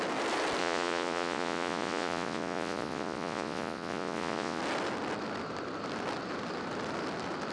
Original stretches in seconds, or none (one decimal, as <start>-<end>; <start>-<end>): 0.0-0.6; 4.6-7.5